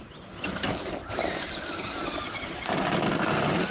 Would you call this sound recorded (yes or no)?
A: yes